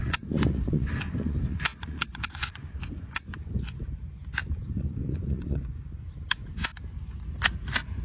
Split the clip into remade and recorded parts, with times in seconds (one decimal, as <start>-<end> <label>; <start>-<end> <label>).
0.0-4.0 remade; 4.0-4.4 recorded; 4.4-5.9 remade; 5.9-8.0 recorded